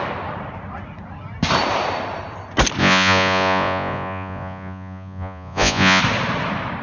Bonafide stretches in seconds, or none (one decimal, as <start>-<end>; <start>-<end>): 0.0-2.8; 6.0-6.8